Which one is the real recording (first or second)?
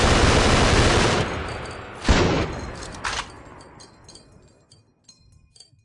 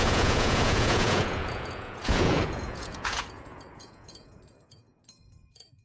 first